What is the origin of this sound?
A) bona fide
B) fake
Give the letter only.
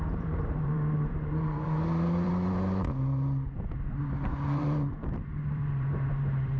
B